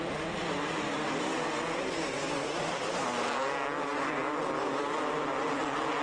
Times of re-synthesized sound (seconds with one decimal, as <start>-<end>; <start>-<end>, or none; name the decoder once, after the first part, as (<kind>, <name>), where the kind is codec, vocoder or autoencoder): none